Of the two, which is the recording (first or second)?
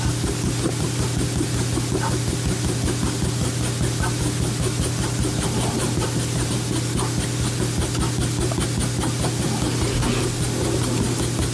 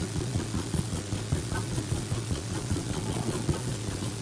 first